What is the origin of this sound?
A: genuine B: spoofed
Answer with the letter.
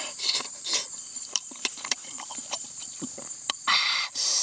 B